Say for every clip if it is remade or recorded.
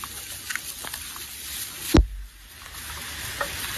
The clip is recorded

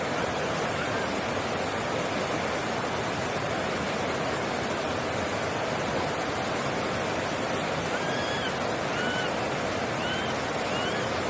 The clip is recorded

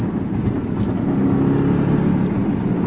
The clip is recorded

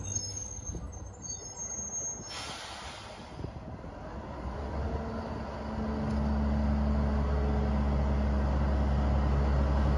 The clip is recorded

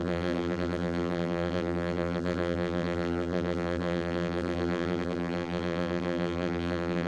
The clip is remade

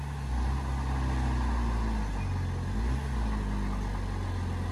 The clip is recorded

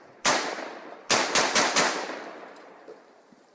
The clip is remade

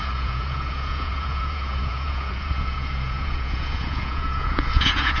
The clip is remade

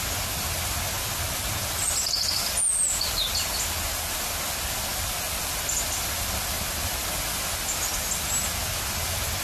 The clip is recorded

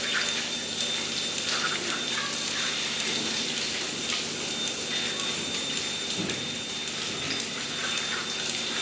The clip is recorded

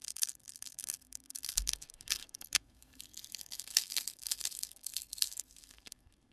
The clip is remade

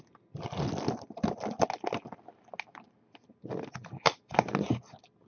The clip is recorded